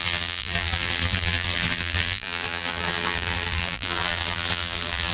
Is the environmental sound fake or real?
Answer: fake